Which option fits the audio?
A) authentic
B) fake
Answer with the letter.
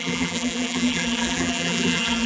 B